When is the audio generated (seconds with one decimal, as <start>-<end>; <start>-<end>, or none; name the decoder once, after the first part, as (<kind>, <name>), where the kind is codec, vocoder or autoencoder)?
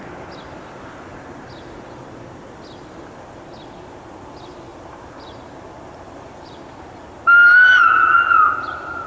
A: 4.7-7.7 (vocoder, BigVGAN v2)